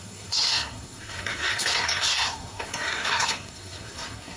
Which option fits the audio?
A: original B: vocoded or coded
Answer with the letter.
B